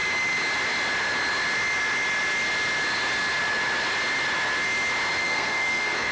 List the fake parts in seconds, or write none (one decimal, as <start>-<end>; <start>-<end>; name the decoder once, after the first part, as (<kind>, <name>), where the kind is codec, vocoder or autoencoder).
5.2-6.1 (codec, SNAC)